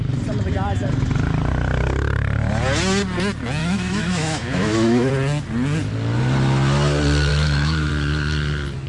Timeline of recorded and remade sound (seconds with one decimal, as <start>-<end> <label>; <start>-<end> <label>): 0.0-3.6 recorded; 3.6-5.1 remade; 5.1-7.3 recorded; 7.3-7.9 remade; 7.9-8.9 recorded